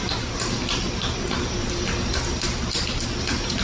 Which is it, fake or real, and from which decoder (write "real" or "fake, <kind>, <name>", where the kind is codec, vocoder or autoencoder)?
real